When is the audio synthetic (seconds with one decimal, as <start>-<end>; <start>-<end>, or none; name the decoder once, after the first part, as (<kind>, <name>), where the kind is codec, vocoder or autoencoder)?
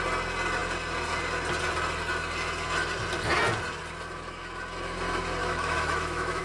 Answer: 5.4-6.4 (autoencoder, DAC-VAE)